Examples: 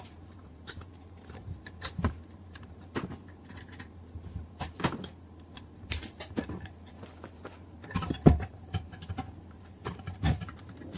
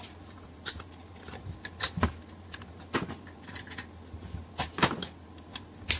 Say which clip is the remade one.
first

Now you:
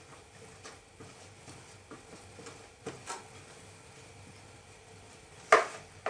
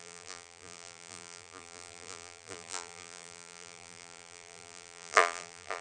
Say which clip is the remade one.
second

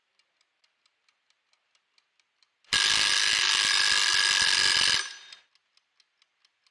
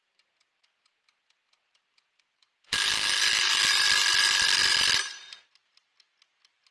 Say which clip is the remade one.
second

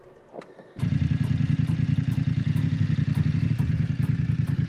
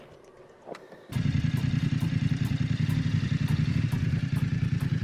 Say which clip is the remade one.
second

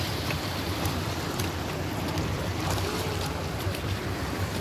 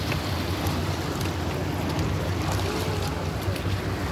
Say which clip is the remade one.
first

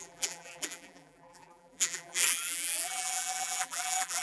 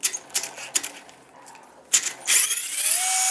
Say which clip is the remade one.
first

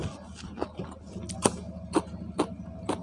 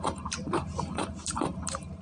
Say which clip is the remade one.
second